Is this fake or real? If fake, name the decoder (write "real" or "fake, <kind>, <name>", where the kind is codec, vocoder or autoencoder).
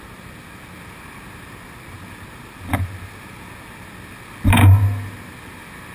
real